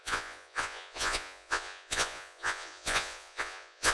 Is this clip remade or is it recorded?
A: remade